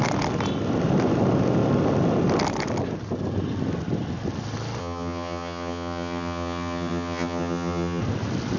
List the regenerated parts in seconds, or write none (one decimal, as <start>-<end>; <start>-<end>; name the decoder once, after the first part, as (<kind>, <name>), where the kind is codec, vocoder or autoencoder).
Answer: 4.8-8.0 (vocoder, HiFi-GAN)

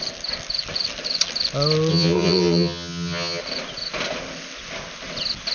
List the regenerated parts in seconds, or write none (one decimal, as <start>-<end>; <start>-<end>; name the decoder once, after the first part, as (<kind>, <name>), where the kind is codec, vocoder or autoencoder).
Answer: 1.9-3.4 (vocoder, HiFi-GAN)

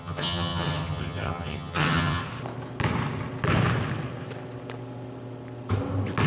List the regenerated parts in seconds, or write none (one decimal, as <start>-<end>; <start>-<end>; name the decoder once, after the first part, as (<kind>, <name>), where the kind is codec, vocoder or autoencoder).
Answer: 0.0-2.2 (vocoder, HiFi-GAN)

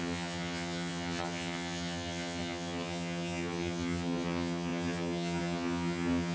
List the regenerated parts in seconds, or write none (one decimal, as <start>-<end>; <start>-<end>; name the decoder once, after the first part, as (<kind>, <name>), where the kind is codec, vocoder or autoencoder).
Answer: 0.0-6.3 (vocoder, HiFi-GAN)

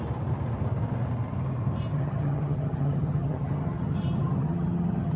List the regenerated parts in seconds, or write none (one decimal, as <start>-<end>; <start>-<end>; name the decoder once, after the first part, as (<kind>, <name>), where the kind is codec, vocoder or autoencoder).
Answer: 1.9-5.2 (vocoder, HiFi-GAN)

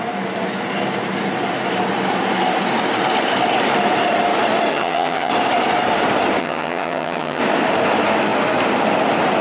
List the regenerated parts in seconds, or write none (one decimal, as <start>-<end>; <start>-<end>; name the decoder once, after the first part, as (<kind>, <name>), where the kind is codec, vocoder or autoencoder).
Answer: 4.7-5.3 (vocoder, HiFi-GAN); 6.4-7.4